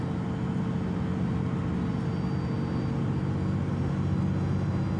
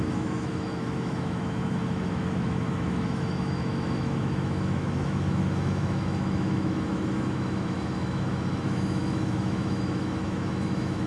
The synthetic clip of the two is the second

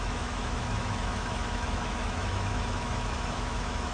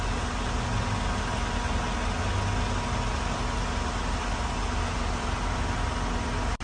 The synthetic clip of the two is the first